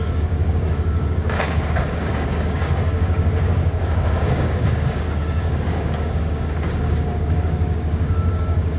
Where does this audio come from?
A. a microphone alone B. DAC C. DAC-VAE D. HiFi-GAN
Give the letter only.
B